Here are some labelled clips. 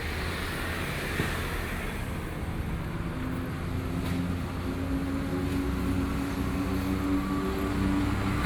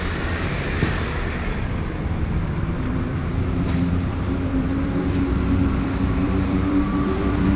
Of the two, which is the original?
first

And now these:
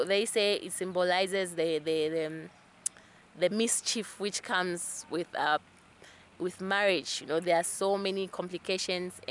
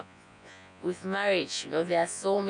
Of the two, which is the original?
first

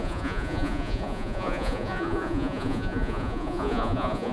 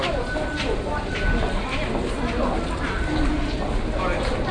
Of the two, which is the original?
second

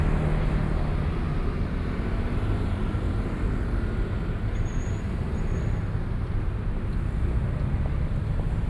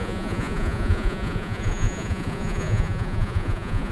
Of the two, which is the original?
first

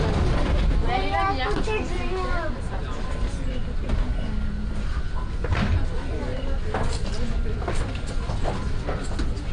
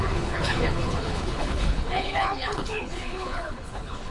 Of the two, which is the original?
first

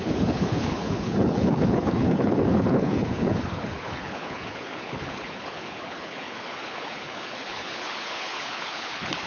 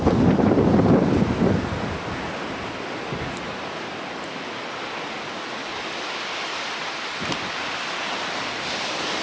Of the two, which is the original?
second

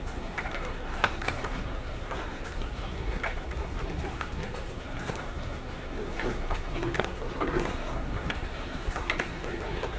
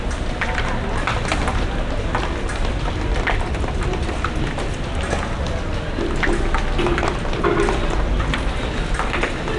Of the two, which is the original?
second